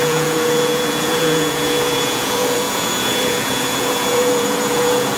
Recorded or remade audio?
remade